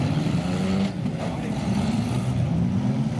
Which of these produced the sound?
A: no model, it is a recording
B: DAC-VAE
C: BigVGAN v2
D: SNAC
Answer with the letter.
A